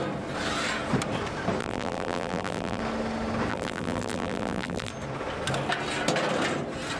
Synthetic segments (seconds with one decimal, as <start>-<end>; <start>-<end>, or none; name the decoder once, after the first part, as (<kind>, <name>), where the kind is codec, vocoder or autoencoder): 1.6-2.8 (vocoder, BigVGAN v2); 3.5-4.9